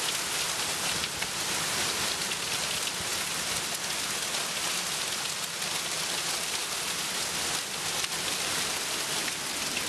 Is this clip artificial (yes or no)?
no